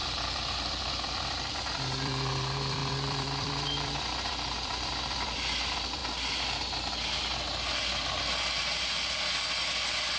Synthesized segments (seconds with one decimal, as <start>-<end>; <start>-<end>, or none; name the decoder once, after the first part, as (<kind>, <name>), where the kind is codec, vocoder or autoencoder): 0.0-6.0 (vocoder, BigVGAN v2)